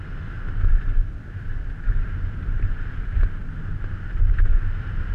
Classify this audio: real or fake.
fake